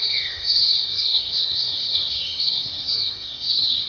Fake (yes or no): yes